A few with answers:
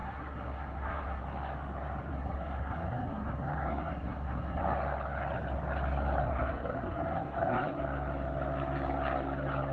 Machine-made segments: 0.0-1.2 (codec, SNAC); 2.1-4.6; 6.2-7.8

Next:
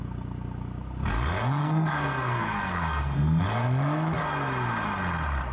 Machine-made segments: 1.6-3.4 (codec, SNAC)

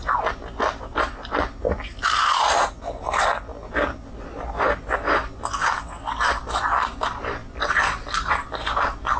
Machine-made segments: none

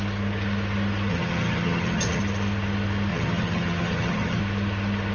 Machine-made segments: 1.1-2.2 (vocoder, HiFi-GAN); 3.1-4.4

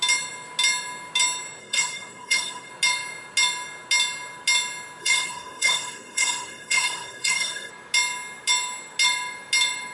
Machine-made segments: 1.6-2.7 (codec, SNAC); 5.0-7.7

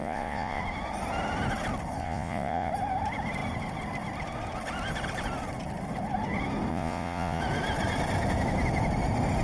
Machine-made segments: 0.0-0.6 (vocoder, Vocos); 2.0-2.7; 6.7-7.4

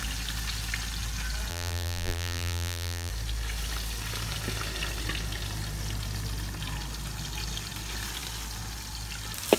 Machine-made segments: 1.5-3.1 (vocoder, BigVGAN v2)